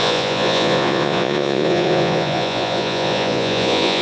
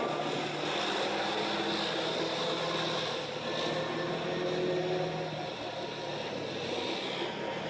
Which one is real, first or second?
second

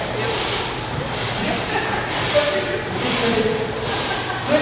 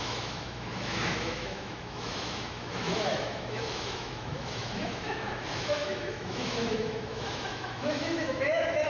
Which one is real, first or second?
first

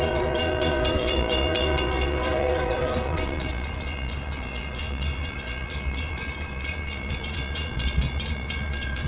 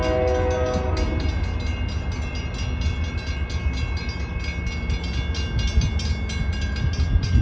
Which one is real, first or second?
second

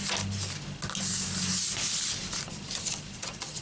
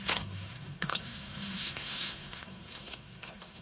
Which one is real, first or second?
first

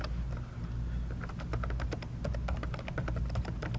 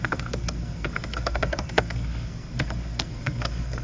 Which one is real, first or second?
first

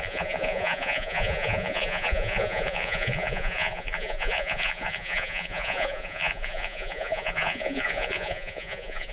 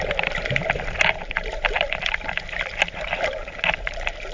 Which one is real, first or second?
second